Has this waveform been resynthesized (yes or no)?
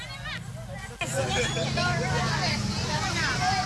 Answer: no